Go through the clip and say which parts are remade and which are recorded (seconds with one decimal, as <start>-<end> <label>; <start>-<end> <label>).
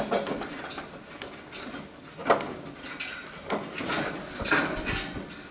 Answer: 0.0-5.5 recorded